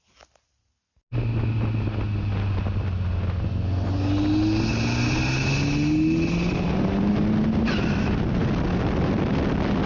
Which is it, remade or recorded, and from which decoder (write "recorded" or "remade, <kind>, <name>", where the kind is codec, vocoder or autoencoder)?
recorded